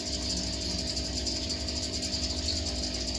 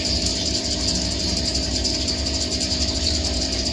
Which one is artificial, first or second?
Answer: second